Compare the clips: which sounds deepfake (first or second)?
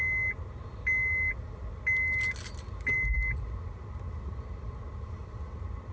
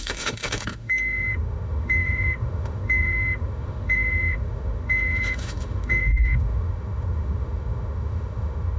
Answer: second